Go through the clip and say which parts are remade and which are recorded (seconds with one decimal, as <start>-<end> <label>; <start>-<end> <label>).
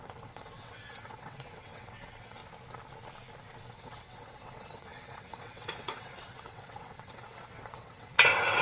0.0-2.4 remade; 2.4-3.7 recorded; 3.7-8.6 remade